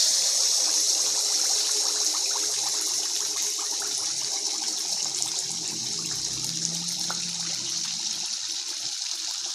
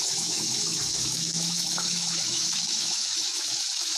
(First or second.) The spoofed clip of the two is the second